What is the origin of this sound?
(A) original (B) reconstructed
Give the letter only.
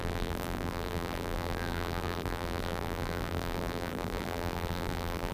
B